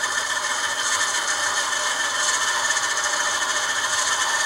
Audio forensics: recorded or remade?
recorded